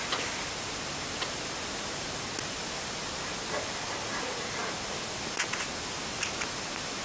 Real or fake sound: real